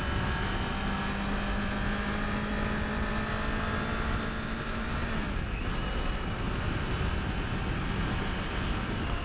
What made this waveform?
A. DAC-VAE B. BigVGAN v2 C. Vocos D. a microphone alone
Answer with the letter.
D